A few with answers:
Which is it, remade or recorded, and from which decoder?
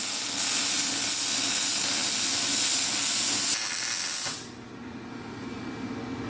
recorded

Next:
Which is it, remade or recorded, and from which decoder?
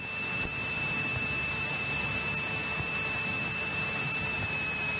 recorded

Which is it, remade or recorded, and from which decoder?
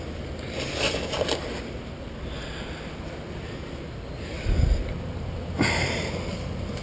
recorded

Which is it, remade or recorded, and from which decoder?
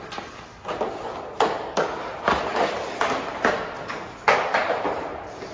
recorded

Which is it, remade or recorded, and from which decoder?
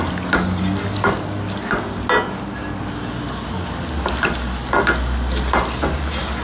recorded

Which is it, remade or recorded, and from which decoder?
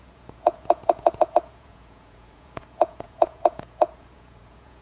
remade, vocoder, Vocos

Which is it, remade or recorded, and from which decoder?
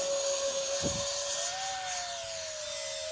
recorded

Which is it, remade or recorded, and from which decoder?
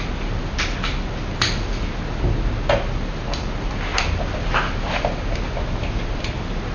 recorded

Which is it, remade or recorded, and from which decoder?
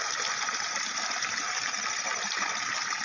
recorded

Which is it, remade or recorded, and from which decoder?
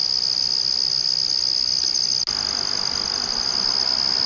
recorded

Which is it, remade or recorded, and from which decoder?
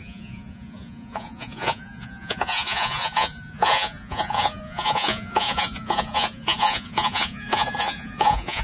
remade, vocoder, Vocos